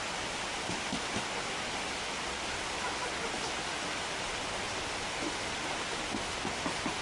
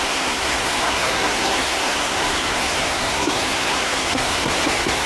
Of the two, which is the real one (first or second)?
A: first